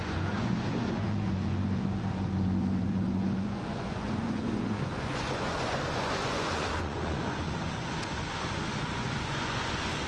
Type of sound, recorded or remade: remade